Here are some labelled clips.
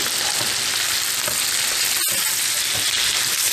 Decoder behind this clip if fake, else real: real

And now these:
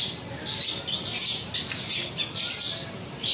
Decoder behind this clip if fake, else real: real